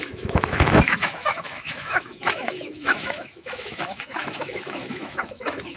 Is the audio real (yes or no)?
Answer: no